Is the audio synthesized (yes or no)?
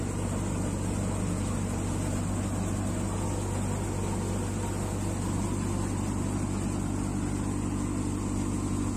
no